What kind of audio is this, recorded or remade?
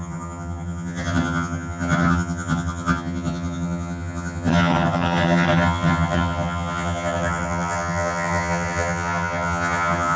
remade